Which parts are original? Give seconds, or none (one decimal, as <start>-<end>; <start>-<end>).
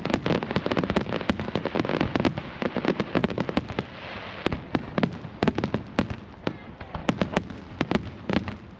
0.0-8.8